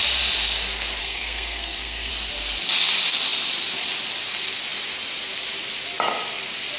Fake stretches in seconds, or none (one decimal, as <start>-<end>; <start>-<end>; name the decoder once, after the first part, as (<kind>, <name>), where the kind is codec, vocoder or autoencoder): 1.0-2.1 (codec, SNAC)